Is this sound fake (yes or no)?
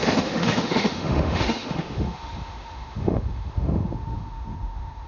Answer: yes